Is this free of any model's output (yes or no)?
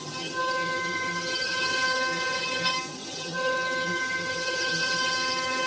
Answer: no